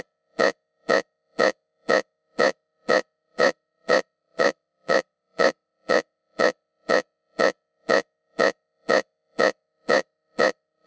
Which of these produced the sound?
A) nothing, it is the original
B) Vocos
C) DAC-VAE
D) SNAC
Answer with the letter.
B